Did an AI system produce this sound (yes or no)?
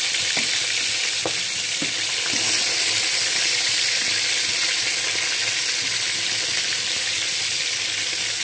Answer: no